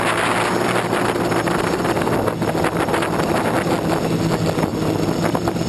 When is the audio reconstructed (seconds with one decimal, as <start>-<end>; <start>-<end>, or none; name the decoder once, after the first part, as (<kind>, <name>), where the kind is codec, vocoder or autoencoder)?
none